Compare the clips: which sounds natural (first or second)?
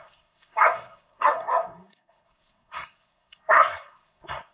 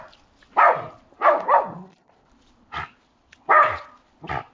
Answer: second